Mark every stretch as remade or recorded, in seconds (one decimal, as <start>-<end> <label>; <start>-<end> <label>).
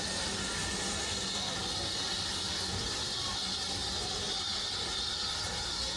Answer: 0.0-6.0 recorded